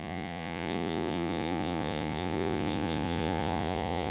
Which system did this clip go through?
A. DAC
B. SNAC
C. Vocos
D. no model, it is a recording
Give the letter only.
C